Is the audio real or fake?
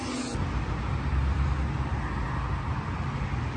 real